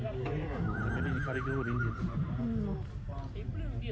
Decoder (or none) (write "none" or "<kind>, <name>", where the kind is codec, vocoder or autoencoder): none